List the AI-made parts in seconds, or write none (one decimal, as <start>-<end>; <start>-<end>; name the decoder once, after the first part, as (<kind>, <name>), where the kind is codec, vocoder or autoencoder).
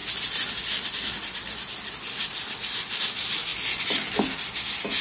none